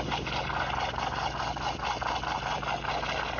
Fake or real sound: real